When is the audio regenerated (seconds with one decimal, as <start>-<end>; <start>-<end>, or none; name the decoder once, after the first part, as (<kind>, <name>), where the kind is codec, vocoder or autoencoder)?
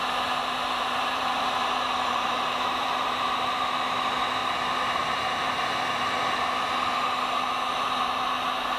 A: 0.6-3.6 (vocoder, BigVGAN v2); 4.4-5.6